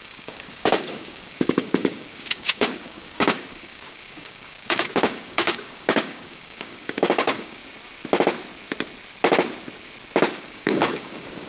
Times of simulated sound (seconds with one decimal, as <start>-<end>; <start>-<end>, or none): 0.0-7.6; 10.3-11.5